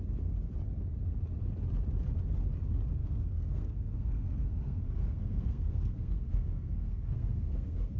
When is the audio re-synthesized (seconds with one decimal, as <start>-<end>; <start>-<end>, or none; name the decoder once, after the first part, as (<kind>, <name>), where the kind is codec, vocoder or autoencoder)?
3.0-8.0 (codec, SNAC)